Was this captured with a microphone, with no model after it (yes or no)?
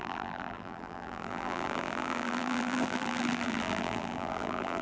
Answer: no